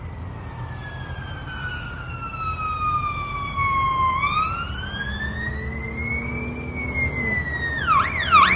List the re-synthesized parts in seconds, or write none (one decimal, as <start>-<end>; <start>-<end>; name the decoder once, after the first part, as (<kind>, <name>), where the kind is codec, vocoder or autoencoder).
none